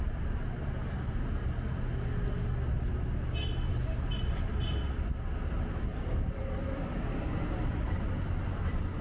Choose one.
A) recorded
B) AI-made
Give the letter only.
A